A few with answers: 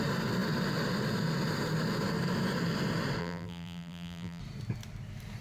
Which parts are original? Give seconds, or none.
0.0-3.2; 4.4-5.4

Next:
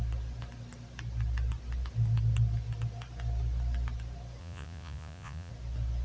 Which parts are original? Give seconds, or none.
0.0-4.4; 5.5-6.0

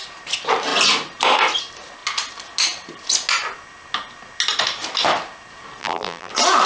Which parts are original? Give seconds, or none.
0.0-5.8; 6.3-6.7